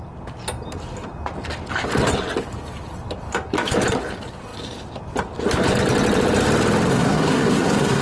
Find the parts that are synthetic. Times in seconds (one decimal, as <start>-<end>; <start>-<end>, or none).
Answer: 6.9-8.0